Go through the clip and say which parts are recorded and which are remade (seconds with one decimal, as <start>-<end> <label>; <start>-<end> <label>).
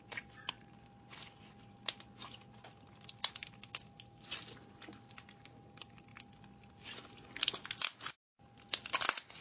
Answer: 0.0-9.4 recorded